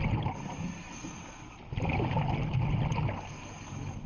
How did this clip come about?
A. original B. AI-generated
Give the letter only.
A